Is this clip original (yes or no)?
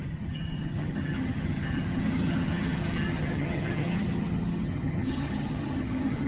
no